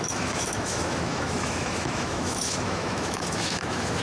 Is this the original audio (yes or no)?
no